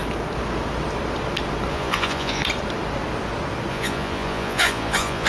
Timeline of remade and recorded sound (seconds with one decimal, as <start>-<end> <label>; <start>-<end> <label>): 0.0-1.7 recorded; 1.7-2.4 remade; 2.4-3.7 recorded; 3.7-5.3 remade